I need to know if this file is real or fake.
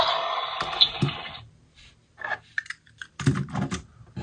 real